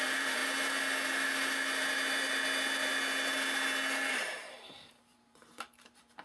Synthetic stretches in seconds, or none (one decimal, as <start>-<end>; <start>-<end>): 0.0-0.4; 4.1-6.2